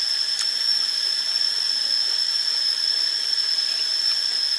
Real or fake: real